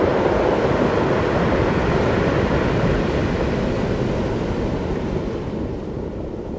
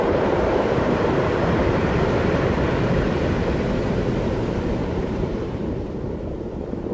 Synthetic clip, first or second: second